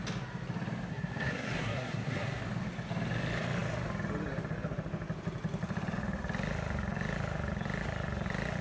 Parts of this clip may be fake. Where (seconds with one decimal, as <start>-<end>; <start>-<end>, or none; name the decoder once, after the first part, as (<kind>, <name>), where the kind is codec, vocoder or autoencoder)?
0.9-2.4 (codec, SNAC)